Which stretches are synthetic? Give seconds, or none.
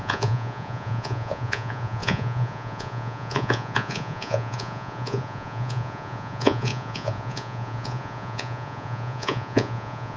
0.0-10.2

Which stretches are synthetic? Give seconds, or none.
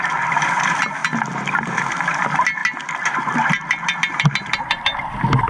none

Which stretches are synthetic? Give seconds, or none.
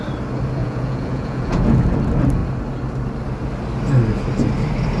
0.6-1.8